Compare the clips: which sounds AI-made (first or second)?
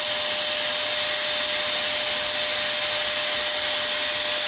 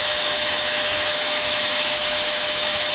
second